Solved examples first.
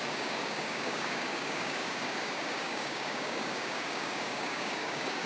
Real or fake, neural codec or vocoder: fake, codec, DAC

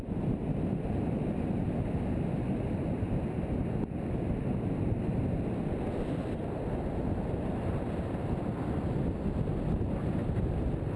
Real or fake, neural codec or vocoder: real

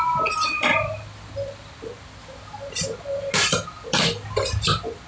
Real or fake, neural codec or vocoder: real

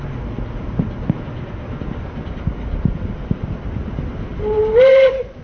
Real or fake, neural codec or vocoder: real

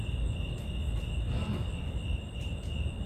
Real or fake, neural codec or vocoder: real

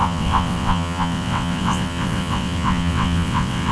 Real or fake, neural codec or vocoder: fake, vocoder, WaveNeXt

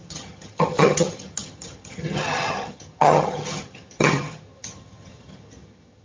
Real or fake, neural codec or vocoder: fake, vocoder, HiFi-GAN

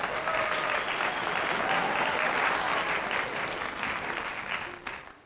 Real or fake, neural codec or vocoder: real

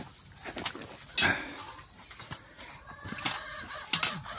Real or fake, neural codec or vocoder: real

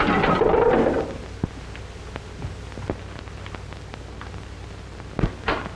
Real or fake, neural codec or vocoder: real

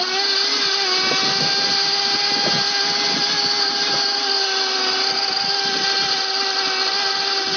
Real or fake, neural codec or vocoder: real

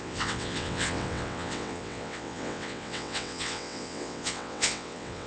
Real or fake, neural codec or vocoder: fake, vocoder, WaveNeXt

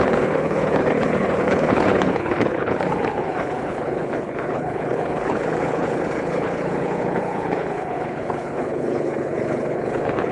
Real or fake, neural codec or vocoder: fake, codec, HILCodec